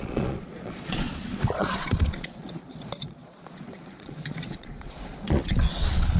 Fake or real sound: fake